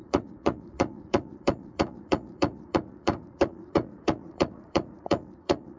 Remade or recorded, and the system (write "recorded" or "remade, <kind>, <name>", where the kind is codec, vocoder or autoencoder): remade, vocoder, Vocos